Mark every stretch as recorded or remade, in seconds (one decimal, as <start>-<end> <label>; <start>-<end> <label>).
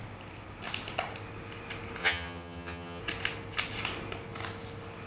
0.0-2.0 recorded; 2.0-3.0 remade; 3.0-5.1 recorded